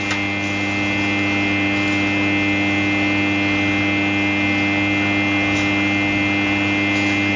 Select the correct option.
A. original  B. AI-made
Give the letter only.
A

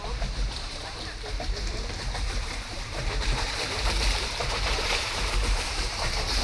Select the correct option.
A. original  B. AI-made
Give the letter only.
B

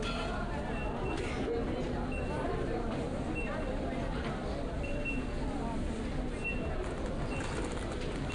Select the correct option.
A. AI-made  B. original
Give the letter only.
B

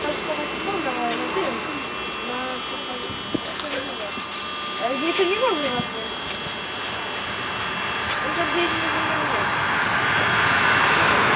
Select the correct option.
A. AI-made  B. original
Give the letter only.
B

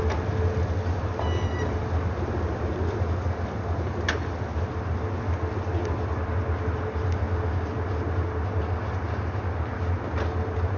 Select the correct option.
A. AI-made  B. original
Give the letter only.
B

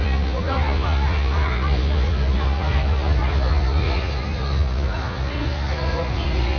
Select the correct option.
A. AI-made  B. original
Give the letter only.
A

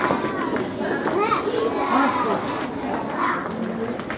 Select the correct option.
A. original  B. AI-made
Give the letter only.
A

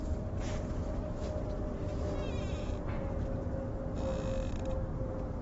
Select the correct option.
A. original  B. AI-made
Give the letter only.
A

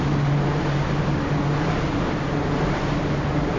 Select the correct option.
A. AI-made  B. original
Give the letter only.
B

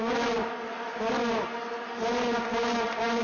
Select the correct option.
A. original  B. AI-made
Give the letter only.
A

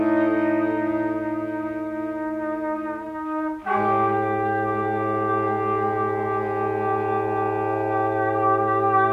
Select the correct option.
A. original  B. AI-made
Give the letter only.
A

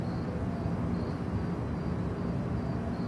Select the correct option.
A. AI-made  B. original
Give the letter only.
B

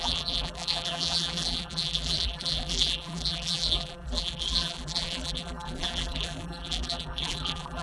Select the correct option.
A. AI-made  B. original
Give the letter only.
A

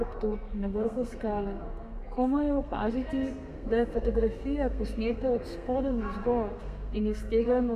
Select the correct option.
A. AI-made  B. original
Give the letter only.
A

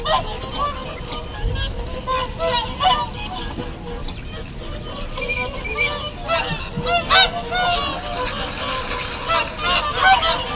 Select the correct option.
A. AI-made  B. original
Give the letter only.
B